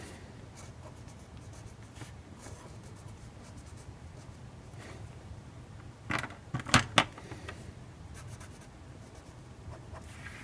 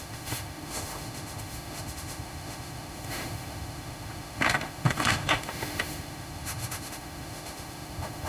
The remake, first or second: second